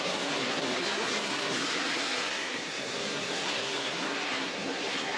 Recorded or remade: remade